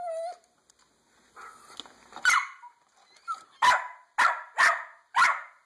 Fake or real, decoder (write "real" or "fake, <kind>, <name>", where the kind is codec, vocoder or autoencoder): real